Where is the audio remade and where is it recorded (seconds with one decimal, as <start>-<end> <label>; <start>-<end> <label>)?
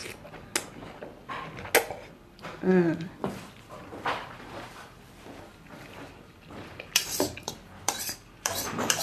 0.0-2.3 recorded; 2.3-9.0 remade